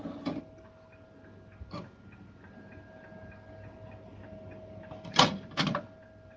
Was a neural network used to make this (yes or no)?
no